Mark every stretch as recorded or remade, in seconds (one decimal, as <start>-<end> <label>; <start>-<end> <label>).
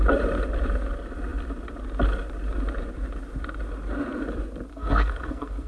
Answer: 0.0-4.7 recorded; 4.7-5.7 remade